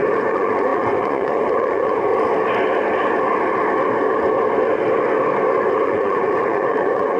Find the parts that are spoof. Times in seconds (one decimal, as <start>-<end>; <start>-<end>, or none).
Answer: 0.0-2.1; 5.7-7.2